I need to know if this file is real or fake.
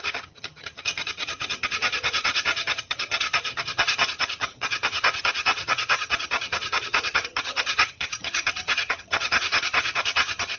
fake